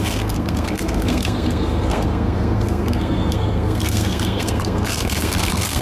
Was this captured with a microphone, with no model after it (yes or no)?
no